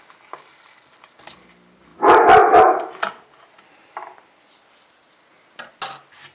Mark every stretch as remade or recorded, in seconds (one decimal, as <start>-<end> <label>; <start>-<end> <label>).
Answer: 0.0-6.3 recorded